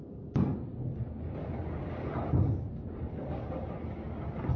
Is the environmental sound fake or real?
real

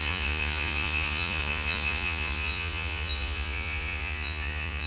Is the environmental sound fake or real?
fake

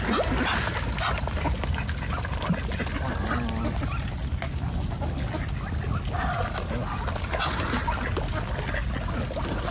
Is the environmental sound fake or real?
real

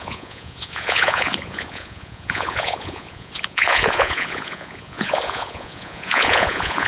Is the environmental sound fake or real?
fake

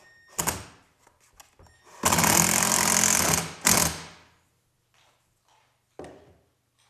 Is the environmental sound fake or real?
real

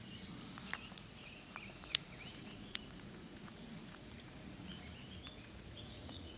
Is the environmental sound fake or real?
fake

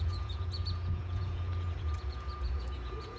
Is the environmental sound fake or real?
fake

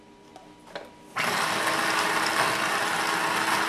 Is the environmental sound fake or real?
real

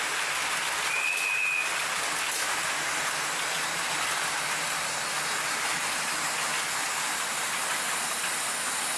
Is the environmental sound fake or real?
real